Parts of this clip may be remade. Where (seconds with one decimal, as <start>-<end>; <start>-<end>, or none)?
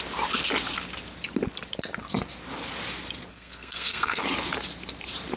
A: 3.3-4.2